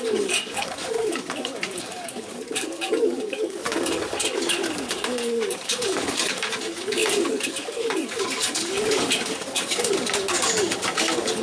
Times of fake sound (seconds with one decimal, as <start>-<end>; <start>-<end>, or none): 0.0-11.4